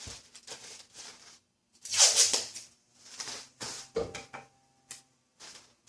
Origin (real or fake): real